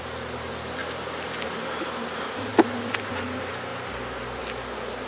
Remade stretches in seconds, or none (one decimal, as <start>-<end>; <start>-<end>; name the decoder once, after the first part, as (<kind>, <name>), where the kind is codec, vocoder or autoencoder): none